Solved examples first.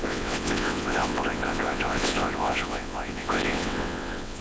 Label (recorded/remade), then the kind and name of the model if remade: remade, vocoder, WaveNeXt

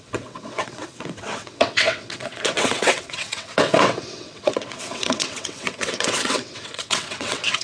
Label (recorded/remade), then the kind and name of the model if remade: remade, vocoder, WaveNeXt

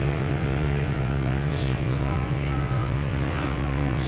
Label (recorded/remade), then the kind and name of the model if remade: remade, vocoder, WaveNeXt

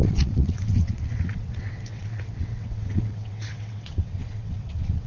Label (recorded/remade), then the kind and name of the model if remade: remade, vocoder, WaveNeXt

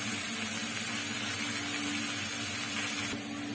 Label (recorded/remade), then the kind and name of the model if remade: recorded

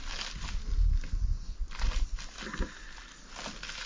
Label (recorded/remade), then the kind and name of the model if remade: recorded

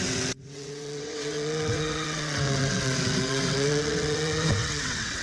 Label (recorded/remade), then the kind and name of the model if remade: remade, vocoder, WaveNeXt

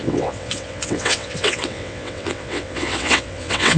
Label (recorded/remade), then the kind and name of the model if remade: remade, vocoder, WaveNeXt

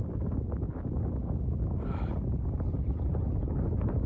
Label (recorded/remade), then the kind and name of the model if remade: recorded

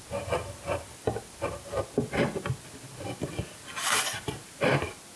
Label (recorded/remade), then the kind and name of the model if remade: recorded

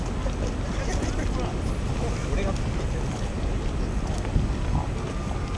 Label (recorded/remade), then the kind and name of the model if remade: recorded